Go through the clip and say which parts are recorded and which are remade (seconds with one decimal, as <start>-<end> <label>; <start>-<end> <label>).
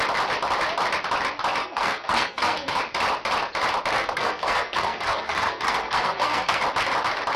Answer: 0.0-1.6 recorded; 1.6-2.8 remade; 2.8-3.9 recorded; 3.9-6.6 remade; 6.6-7.4 recorded